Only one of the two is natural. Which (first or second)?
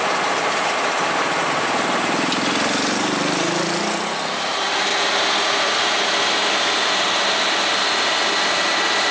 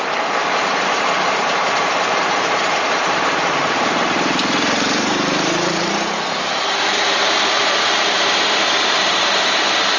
first